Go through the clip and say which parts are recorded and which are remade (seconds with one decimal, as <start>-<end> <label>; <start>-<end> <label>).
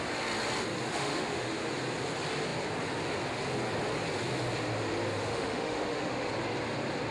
0.0-0.9 recorded; 0.9-1.5 remade; 1.5-5.3 recorded; 5.3-6.3 remade; 6.3-7.1 recorded